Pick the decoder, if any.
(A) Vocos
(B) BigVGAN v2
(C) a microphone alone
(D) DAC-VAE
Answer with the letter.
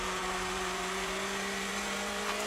B